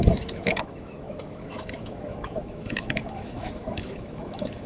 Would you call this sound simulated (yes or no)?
yes